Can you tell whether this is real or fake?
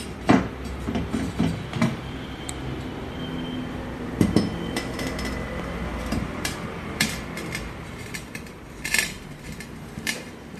fake